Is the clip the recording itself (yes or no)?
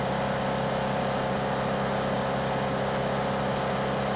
yes